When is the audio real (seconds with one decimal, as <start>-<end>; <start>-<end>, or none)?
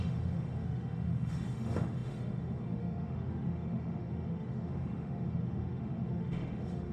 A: none